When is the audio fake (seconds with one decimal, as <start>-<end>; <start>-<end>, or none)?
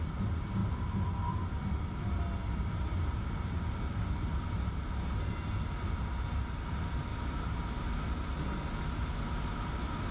7.1-7.6